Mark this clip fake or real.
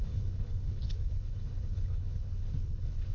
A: fake